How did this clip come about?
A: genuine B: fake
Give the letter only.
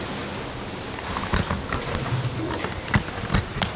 A